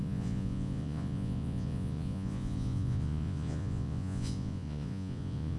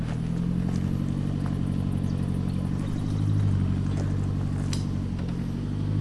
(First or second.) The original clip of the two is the second